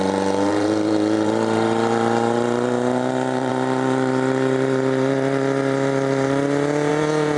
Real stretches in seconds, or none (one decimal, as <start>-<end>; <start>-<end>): none